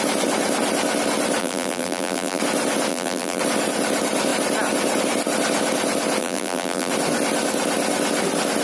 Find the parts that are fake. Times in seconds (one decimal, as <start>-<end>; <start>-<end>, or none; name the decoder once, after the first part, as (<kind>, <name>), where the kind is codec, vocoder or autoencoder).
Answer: 1.4-2.4 (vocoder, BigVGAN v2); 2.9-3.4; 6.2-6.9